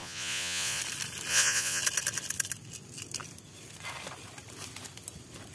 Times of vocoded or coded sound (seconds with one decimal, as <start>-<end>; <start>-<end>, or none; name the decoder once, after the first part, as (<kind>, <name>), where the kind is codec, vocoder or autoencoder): 0.0-0.8 (vocoder, Vocos); 1.3-1.8